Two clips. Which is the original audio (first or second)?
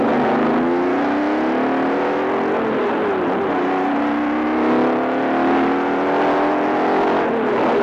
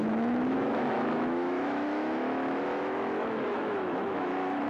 first